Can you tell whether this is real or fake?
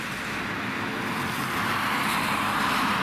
real